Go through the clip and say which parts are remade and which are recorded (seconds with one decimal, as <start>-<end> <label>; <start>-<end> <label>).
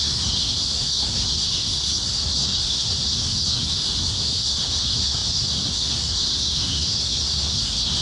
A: 0.0-8.0 remade